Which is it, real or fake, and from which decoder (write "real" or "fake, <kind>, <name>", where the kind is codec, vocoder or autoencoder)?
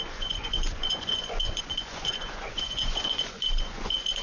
fake, vocoder, Vocos